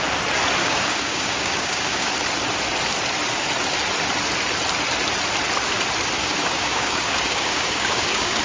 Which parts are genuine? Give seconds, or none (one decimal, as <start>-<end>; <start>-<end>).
0.0-0.6; 2.1-6.2